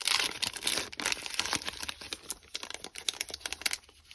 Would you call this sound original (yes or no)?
yes